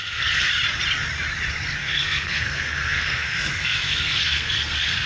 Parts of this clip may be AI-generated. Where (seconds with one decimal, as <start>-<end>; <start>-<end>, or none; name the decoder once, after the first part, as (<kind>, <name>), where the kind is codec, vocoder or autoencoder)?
0.0-0.5 (codec, SNAC); 1.8-5.1